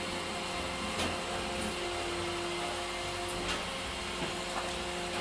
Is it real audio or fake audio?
real